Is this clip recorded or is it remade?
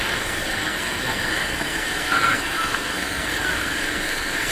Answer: remade